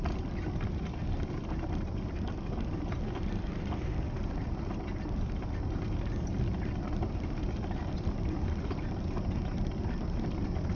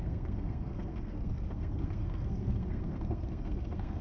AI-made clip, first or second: second